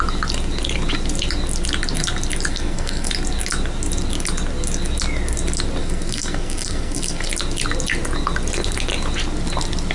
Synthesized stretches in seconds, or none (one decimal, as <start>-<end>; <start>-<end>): 2.5-3.1; 5.8-7.3